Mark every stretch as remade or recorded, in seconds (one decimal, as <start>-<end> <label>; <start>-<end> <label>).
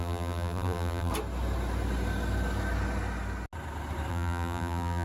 0.0-1.1 remade; 1.1-4.1 recorded; 4.1-5.0 remade